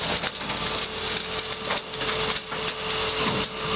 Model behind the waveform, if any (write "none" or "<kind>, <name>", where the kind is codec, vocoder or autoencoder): none